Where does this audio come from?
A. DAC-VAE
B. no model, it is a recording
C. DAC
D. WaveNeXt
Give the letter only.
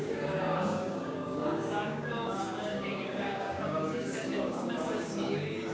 C